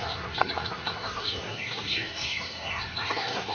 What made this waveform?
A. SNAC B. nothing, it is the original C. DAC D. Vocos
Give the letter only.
A